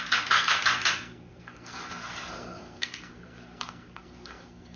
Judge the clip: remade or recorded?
remade